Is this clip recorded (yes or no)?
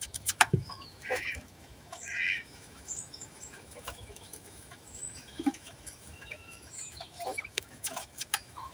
no